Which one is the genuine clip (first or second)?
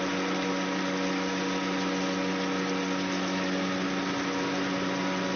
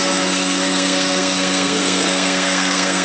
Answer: first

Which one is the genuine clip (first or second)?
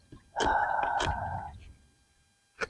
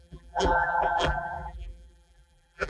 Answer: first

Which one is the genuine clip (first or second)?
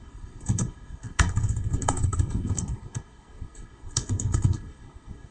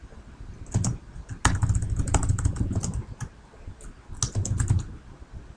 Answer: second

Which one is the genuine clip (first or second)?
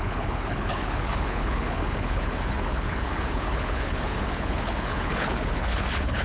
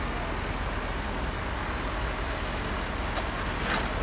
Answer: second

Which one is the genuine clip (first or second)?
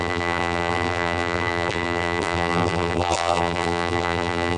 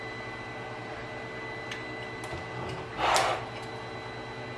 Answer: second